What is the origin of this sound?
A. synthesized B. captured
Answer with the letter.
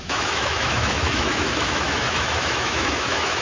A